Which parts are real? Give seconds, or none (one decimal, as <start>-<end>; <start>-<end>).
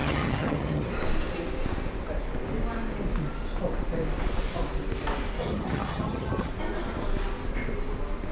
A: 0.9-5.4; 6.5-8.3